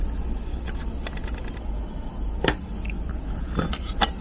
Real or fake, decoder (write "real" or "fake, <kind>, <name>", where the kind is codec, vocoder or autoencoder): real